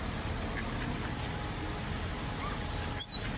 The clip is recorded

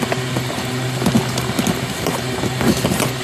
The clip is recorded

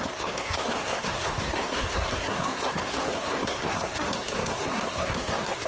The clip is remade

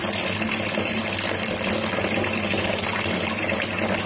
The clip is recorded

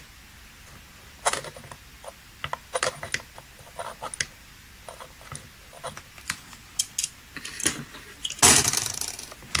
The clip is recorded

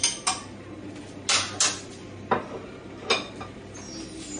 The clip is recorded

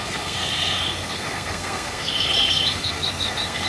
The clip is remade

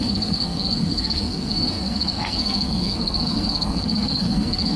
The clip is remade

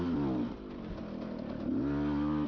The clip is recorded